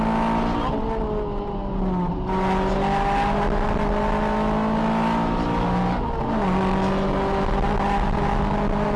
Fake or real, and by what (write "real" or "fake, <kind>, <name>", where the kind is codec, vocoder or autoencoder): real